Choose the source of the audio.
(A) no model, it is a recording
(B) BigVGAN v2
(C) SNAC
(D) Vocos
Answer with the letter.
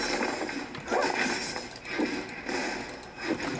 A